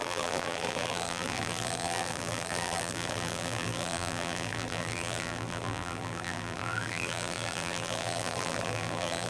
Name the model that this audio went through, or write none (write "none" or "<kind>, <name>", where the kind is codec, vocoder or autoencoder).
vocoder, BigVGAN v2